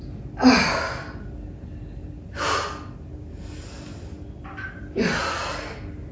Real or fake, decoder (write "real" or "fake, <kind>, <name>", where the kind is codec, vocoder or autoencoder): real